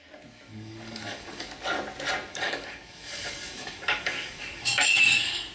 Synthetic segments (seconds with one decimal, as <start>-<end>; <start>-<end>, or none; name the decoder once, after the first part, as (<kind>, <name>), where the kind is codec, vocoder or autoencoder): 0.5-1.5 (codec, DAC); 2.3-5.5